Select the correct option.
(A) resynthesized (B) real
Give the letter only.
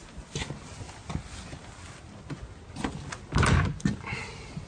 B